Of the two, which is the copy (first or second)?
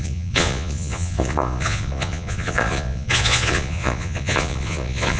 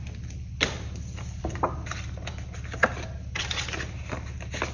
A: first